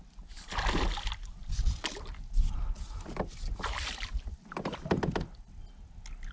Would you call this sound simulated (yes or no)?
no